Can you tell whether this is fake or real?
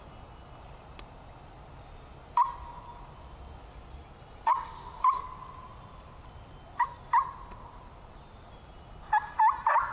real